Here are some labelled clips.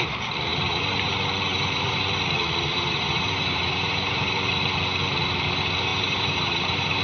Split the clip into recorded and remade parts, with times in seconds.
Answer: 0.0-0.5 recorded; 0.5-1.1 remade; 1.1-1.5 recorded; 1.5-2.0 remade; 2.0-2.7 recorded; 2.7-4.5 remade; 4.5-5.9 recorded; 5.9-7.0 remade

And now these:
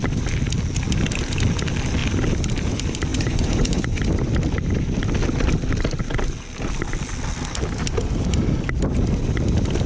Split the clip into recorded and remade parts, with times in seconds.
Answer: 0.0-3.1 recorded; 3.1-4.0 remade; 4.0-9.9 recorded

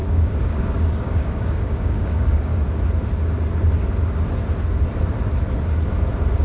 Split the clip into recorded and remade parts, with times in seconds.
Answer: 0.0-2.5 remade; 2.5-6.4 recorded

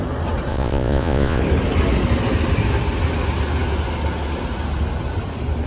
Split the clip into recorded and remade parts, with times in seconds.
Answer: 0.0-0.5 recorded; 0.5-1.4 remade; 1.4-5.7 recorded

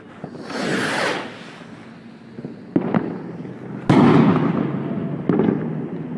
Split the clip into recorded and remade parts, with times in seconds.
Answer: 0.0-6.2 recorded